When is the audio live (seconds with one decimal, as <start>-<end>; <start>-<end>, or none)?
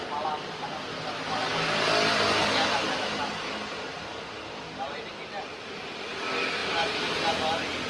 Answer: 0.0-7.9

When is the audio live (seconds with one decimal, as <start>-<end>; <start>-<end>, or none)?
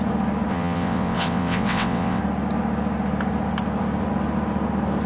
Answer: 0.0-0.5; 2.2-5.1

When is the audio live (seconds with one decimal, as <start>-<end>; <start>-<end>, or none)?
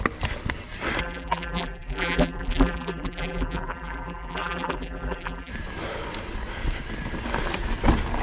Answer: 0.0-1.0; 5.5-8.2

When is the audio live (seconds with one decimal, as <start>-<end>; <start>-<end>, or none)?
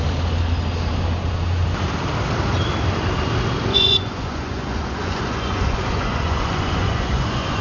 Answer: 0.0-3.7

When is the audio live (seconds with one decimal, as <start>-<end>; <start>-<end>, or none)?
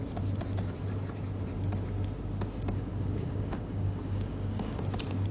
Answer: 0.0-2.9; 4.8-5.3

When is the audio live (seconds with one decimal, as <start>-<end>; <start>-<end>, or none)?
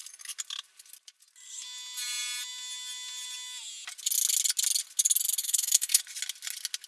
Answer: 0.0-5.4; 6.0-6.9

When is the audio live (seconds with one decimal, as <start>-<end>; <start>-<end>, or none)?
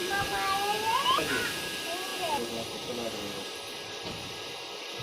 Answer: 0.0-5.0